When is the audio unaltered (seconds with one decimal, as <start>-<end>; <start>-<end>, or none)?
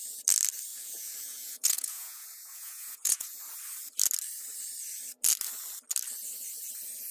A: 0.0-0.7; 3.4-7.1